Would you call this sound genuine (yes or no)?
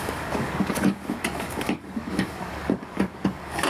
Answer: no